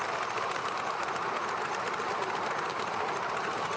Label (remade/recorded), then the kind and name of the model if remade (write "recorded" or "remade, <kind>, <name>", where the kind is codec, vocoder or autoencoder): remade, vocoder, BigVGAN v2